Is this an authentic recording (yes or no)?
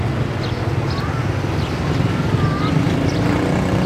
yes